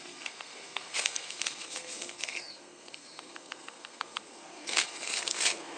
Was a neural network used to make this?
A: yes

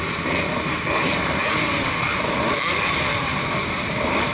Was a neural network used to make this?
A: yes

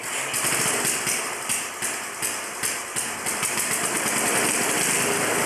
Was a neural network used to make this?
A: no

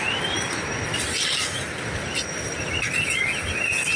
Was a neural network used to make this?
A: no